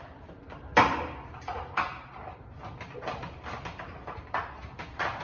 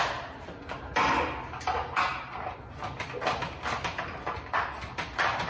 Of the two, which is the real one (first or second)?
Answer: second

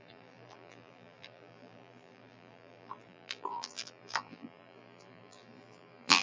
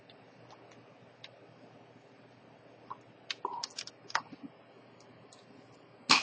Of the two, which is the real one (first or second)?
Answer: second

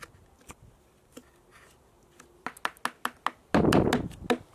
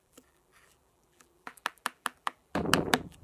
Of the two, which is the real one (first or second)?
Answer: first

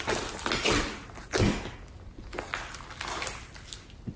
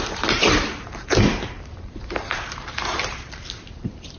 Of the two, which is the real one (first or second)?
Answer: first